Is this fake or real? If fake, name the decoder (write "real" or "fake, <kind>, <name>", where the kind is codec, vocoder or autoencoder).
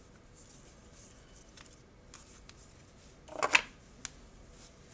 real